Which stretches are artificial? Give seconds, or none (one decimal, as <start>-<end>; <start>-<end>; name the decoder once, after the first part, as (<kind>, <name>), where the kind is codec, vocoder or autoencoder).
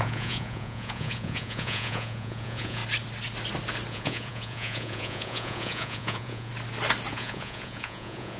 0.0-2.8 (vocoder, Vocos); 3.9-6.5; 7.1-8.4